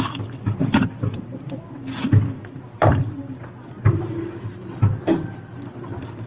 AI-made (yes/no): yes